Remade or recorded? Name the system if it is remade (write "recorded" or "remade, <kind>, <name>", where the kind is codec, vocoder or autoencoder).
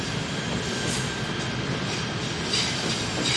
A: recorded